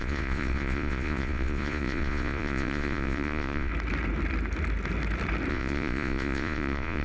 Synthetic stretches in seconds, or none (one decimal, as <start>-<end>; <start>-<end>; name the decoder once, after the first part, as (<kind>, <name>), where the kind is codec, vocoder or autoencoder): 0.0-3.7 (vocoder, Vocos); 5.5-7.0